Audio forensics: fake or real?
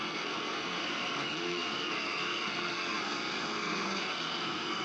fake